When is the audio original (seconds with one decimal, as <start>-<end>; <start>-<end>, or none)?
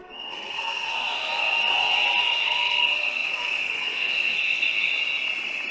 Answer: 1.6-2.2; 4.9-5.7